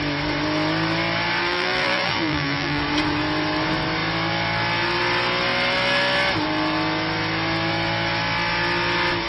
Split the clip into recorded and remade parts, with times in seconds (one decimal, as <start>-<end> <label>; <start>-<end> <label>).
0.0-1.4 recorded; 1.4-2.8 remade; 2.8-9.3 recorded